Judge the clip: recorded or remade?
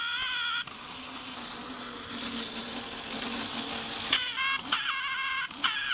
recorded